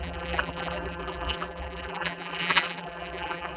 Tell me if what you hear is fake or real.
fake